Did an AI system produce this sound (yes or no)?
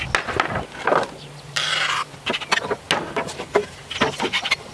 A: no